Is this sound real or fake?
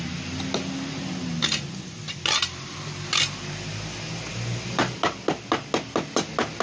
real